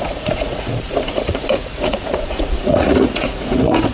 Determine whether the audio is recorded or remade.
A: remade